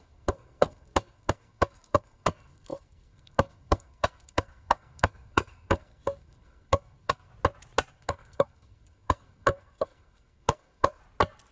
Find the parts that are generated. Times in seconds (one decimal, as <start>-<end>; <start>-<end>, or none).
0.0-7.3; 7.9-11.0